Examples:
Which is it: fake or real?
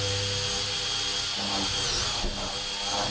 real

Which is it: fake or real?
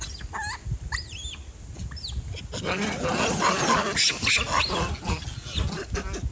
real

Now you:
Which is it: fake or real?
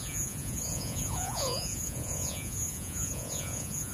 fake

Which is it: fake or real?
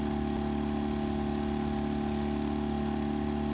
real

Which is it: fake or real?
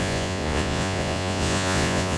fake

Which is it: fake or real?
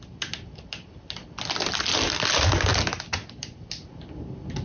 real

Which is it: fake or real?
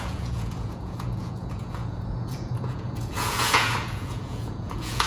fake